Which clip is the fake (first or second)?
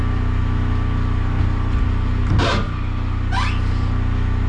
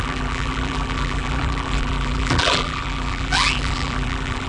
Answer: second